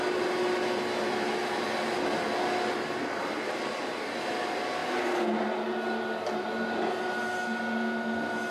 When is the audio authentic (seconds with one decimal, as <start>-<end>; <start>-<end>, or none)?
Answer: 0.0-8.5